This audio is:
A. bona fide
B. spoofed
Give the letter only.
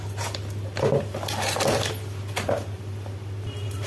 B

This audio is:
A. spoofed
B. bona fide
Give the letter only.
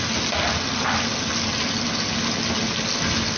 B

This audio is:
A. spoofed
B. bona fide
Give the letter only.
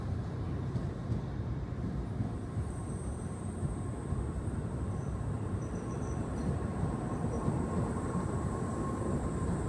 A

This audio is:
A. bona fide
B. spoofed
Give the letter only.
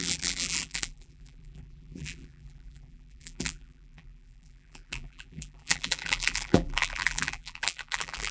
B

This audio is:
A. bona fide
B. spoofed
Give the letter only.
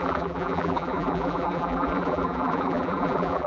B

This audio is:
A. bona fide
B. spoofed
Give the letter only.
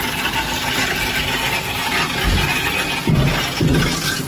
A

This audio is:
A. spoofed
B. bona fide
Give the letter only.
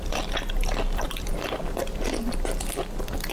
B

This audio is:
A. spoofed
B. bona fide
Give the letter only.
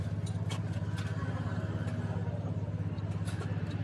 B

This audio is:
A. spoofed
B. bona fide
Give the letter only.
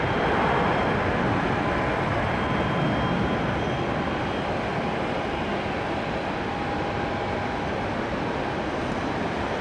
B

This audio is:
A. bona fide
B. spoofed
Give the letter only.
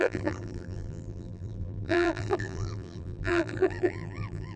B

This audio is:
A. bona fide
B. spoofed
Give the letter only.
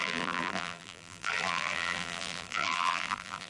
B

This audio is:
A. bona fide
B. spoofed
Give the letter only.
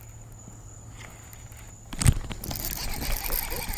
A